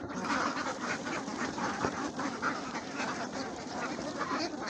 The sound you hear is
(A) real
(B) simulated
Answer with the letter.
B